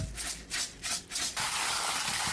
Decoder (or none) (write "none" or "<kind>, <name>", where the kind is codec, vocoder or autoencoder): none